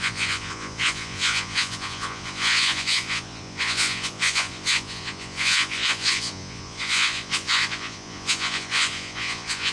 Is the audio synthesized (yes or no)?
yes